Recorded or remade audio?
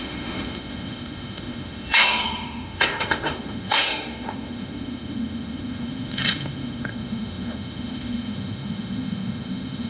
remade